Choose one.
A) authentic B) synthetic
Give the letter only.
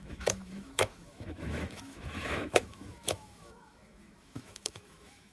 B